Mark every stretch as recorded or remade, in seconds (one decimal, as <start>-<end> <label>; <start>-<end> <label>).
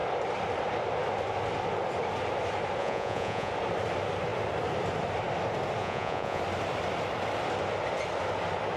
0.0-2.8 recorded; 2.8-3.5 remade; 3.5-5.8 recorded; 5.8-6.4 remade; 6.4-8.8 recorded